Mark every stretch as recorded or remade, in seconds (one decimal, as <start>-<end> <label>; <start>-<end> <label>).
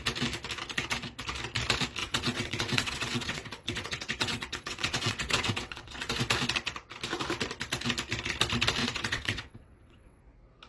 0.0-2.0 recorded; 2.0-6.1 remade; 6.1-8.8 recorded; 8.8-10.2 remade; 10.2-10.7 recorded